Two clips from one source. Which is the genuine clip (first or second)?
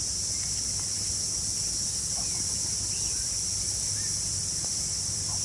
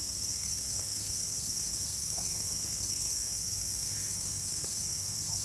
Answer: first